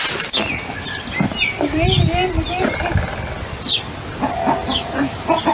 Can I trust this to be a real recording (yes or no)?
yes